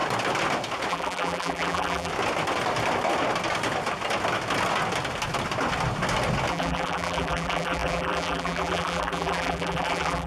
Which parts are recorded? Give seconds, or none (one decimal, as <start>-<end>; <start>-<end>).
0.0-0.9; 2.1-6.5